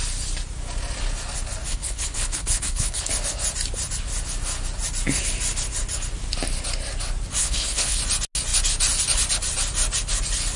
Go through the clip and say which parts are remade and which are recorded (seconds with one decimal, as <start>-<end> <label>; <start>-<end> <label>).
0.0-1.7 recorded; 1.7-3.1 remade; 3.1-7.4 recorded; 7.4-8.0 remade; 8.0-10.6 recorded